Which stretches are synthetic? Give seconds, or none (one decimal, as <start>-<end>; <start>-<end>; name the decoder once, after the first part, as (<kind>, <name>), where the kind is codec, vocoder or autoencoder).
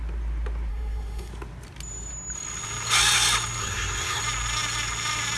0.7-1.3 (codec, SNAC); 3.6-4.2